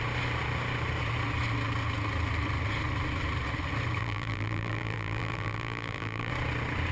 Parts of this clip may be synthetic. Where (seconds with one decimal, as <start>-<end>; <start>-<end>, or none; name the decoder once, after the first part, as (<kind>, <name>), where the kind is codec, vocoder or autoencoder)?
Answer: 4.0-6.3 (vocoder, BigVGAN v2)